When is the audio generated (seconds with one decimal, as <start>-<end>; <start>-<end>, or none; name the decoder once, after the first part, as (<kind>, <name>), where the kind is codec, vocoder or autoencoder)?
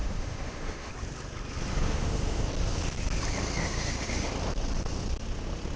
0.0-0.9 (autoencoder, DAC-VAE); 1.7-2.4; 3.6-4.3